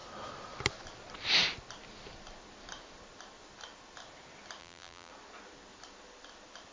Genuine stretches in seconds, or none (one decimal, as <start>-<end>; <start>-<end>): 0.0-4.6; 5.1-6.7